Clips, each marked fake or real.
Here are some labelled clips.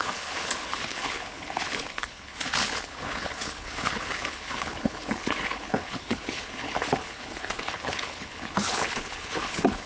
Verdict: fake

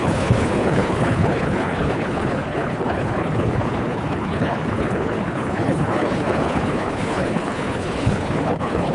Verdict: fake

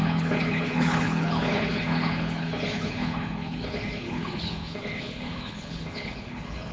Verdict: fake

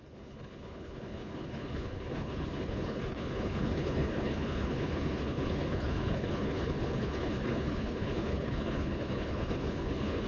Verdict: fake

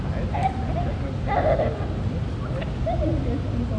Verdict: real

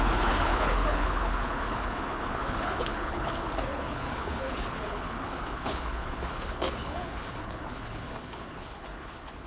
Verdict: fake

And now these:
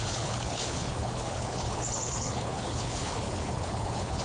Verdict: fake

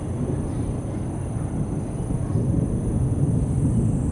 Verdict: real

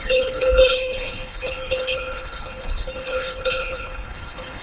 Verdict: fake